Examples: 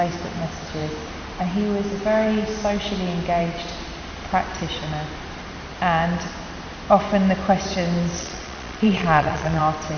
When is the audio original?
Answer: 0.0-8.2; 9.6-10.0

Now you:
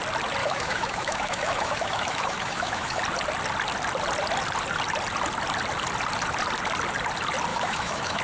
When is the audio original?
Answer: 0.0-0.4; 3.0-7.5

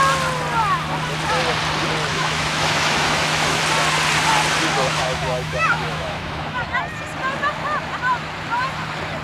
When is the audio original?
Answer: 0.0-2.1; 3.6-4.8; 6.7-9.2

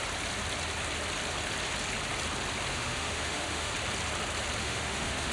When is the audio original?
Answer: 0.0-2.7; 3.7-4.6

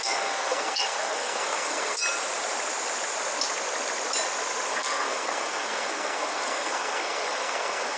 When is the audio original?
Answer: 2.0-4.7

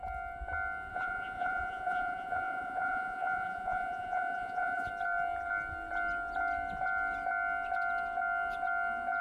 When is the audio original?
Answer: 0.0-0.9; 4.9-9.2

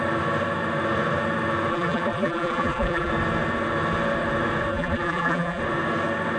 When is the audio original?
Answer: 0.0-1.7; 3.1-4.7; 5.6-6.4